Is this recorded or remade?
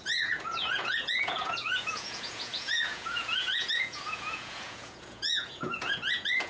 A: remade